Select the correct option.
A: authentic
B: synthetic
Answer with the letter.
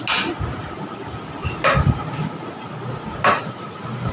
A